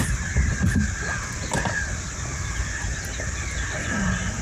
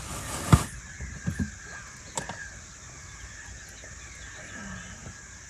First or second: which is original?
second